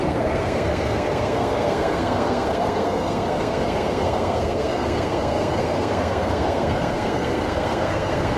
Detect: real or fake fake